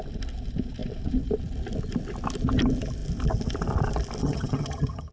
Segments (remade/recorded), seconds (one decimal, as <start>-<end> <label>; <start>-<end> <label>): 0.0-4.2 recorded; 4.2-5.1 remade

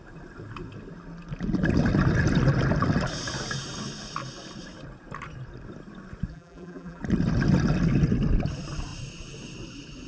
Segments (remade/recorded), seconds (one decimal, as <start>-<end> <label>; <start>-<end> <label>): 0.0-6.3 recorded; 6.3-7.0 remade; 7.0-10.1 recorded

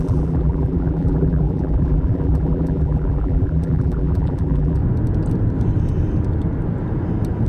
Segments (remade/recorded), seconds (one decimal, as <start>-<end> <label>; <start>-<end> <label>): 0.0-4.8 remade; 4.8-7.5 recorded

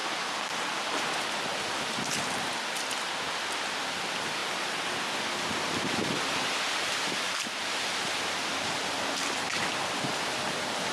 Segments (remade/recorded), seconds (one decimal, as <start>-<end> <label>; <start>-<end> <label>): 0.0-10.9 recorded

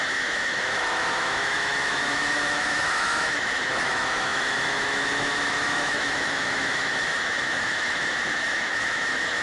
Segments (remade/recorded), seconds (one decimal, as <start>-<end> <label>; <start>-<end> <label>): 0.0-9.4 remade